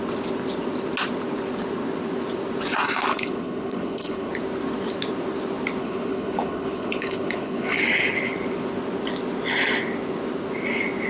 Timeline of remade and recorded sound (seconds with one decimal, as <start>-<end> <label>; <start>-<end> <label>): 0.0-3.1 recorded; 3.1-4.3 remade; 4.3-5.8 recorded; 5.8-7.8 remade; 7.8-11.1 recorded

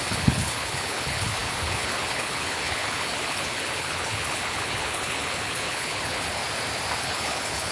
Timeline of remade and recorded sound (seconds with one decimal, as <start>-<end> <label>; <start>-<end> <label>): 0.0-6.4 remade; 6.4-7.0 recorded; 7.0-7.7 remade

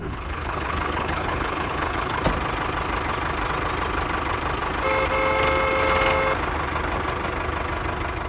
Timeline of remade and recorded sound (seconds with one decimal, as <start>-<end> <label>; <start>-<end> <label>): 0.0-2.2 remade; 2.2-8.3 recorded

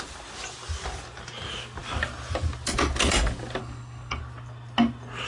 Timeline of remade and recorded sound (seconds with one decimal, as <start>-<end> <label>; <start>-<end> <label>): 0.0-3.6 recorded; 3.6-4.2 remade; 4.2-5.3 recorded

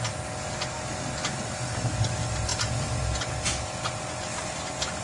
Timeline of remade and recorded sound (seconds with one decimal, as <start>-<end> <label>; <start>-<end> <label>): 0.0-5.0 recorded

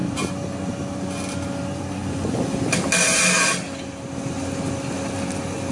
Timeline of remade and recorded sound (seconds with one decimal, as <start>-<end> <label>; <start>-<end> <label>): 0.0-5.7 recorded

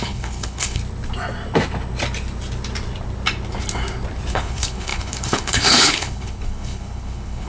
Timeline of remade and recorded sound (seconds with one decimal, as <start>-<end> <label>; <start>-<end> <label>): 0.0-0.8 remade; 0.8-4.3 recorded; 4.3-7.5 remade

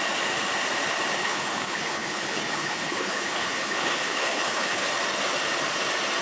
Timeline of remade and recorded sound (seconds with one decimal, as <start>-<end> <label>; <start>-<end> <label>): 0.0-1.2 recorded; 1.2-4.9 remade; 4.9-6.2 recorded